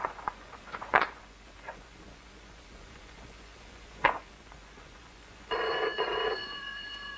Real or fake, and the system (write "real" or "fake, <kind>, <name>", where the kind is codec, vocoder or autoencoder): fake, vocoder, Vocos